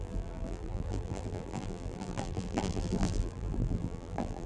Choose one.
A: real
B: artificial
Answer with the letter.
B